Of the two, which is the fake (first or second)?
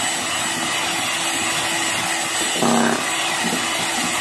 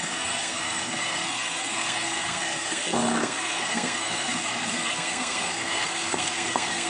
second